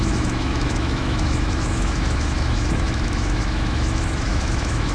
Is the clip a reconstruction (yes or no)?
yes